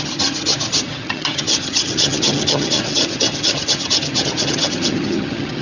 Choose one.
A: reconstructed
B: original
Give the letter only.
A